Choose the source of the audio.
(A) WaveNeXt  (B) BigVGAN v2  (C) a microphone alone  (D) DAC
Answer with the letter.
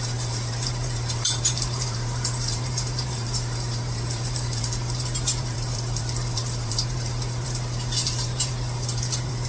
B